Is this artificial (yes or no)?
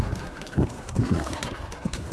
yes